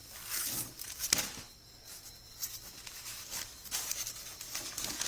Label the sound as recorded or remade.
recorded